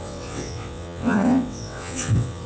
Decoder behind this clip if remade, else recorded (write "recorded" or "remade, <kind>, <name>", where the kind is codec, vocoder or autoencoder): remade, vocoder, WaveNeXt